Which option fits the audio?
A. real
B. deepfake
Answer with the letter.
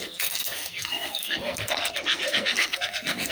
B